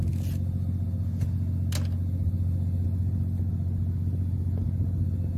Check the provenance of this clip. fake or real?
real